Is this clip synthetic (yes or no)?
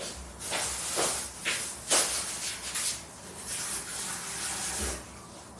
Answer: no